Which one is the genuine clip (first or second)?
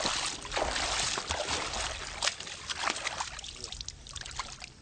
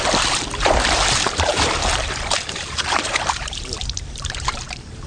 first